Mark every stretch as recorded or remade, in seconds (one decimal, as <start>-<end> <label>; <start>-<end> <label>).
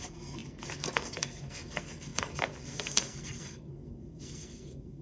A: 0.0-5.0 remade